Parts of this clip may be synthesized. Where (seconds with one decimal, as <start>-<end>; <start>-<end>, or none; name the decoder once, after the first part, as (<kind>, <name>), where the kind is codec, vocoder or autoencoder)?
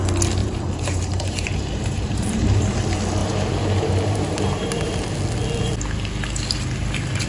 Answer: 0.4-2.6 (vocoder, BigVGAN v2); 3.2-5.2